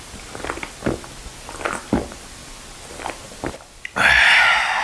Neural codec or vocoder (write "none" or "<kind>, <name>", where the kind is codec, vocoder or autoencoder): none